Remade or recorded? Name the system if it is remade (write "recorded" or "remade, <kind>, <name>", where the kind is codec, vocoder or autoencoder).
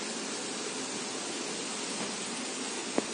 recorded